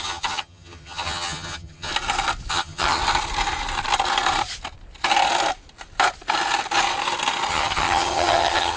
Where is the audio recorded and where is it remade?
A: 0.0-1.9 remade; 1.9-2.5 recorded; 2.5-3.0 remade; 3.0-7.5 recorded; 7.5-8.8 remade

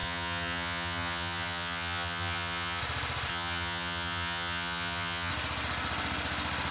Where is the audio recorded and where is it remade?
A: 0.0-2.8 remade; 2.8-3.3 recorded; 3.3-5.3 remade; 5.3-6.7 recorded

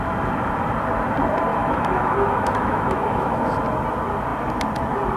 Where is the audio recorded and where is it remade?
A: 0.0-1.5 recorded; 1.5-3.5 remade; 3.5-5.2 recorded